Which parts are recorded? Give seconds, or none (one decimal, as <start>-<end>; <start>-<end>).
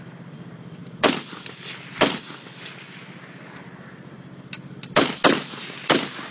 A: 0.0-6.3